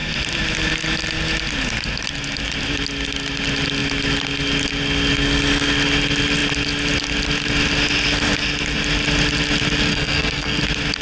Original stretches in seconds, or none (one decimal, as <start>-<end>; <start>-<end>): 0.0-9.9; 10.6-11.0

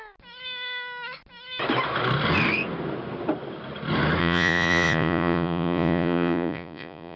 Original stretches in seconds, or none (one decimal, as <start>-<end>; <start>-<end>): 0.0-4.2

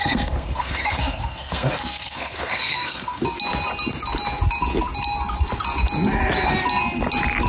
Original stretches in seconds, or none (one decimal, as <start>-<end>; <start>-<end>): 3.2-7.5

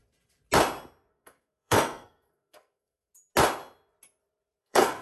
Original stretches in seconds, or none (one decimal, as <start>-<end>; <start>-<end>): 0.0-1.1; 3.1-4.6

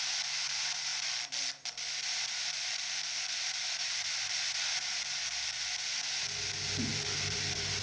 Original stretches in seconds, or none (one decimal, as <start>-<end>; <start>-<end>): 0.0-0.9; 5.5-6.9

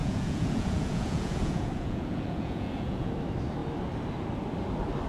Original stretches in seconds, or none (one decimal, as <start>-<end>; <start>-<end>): 3.1-5.1